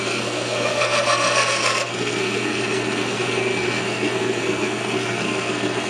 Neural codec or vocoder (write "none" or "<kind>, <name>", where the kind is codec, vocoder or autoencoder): codec, SNAC